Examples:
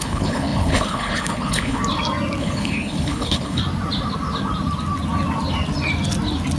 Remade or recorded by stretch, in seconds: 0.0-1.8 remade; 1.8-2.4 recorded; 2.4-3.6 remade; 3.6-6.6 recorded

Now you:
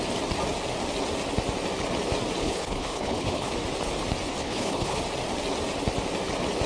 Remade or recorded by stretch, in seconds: 0.0-2.4 recorded; 2.4-3.5 remade; 3.5-4.4 recorded; 4.4-5.0 remade; 5.0-6.7 recorded

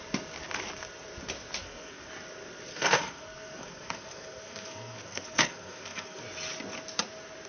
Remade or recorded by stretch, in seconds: 0.0-1.6 recorded; 1.6-2.1 remade; 2.1-2.7 recorded; 2.7-6.2 remade; 6.2-7.5 recorded

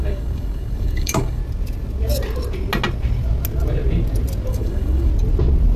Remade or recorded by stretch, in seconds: 0.0-1.4 remade; 1.4-4.5 recorded; 4.5-5.1 remade; 5.1-5.8 recorded

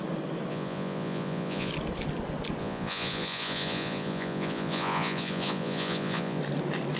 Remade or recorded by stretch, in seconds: 0.0-0.5 recorded; 0.5-1.7 remade; 1.7-2.6 recorded; 2.6-6.4 remade; 6.4-7.0 recorded

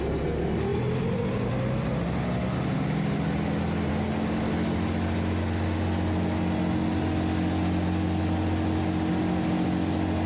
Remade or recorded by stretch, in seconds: 0.0-10.3 recorded